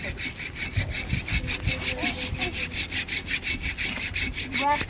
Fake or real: real